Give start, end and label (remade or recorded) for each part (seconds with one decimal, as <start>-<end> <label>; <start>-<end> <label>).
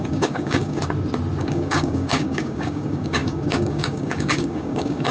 0.0-0.8 remade; 0.8-1.4 recorded; 1.4-5.1 remade